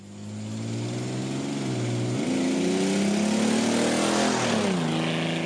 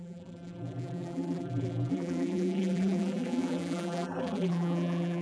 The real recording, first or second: first